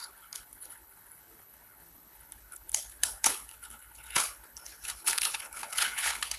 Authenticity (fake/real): fake